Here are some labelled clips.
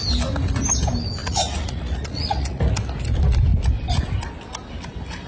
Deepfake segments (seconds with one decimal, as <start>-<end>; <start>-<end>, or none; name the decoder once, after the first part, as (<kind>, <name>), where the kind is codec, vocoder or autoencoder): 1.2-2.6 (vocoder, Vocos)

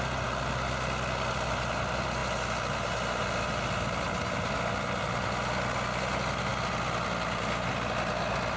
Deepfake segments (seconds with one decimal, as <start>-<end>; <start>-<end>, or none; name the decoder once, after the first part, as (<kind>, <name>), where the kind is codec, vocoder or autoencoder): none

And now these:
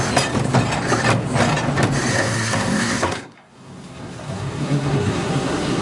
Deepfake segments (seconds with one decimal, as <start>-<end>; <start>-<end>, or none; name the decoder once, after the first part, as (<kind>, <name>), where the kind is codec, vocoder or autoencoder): 2.1-5.8 (codec, SNAC)

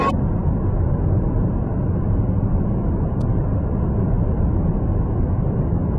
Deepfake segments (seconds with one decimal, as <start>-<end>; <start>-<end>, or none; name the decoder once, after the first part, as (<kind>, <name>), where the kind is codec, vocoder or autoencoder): none

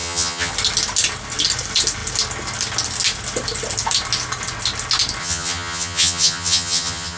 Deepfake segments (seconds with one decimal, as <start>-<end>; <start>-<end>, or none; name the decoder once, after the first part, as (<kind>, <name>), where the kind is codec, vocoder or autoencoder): 0.0-0.5 (vocoder, HiFi-GAN); 5.2-7.2